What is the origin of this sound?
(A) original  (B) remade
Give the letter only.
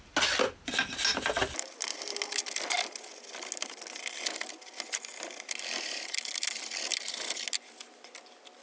A